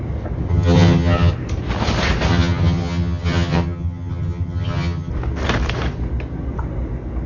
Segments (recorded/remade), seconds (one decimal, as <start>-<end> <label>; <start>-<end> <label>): 0.0-0.5 recorded; 0.5-1.3 remade; 1.3-2.3 recorded; 2.3-5.1 remade; 5.1-7.3 recorded